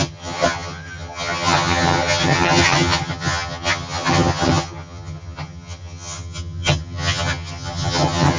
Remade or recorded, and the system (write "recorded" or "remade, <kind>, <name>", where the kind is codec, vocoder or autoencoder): remade, vocoder, HiFi-GAN